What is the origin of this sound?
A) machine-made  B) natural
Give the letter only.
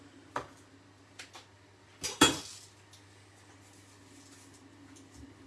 B